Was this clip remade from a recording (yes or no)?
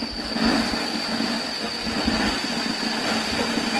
no